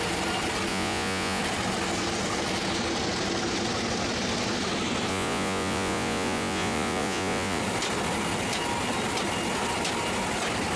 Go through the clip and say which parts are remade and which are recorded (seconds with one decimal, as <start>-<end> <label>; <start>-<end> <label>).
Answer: 0.0-0.7 recorded; 0.7-1.4 remade; 1.4-5.1 recorded; 5.1-7.6 remade; 7.6-10.8 recorded